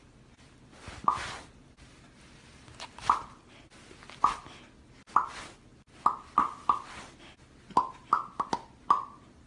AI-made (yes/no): no